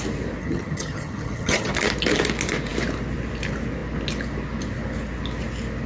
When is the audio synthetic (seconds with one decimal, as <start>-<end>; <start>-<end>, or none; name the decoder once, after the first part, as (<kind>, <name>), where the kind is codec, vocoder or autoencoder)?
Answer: 0.4-1.7 (vocoder, HiFi-GAN)